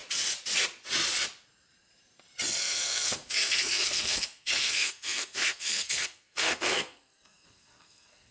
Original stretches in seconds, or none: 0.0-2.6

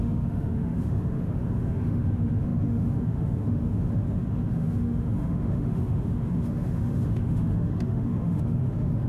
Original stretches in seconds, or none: none

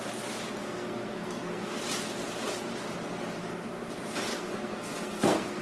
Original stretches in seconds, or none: 0.0-0.6; 1.8-3.4; 3.9-4.3

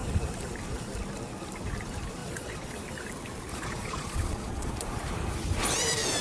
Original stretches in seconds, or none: 0.0-2.2; 2.8-3.5; 4.7-6.2

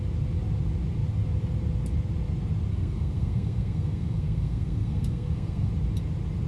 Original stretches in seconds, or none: 0.0-2.7; 5.7-6.5

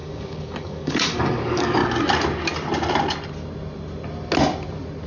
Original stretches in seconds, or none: 1.8-5.1

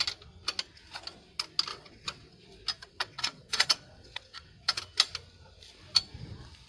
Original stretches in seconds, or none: 0.0-1.7; 2.4-2.8; 4.8-6.7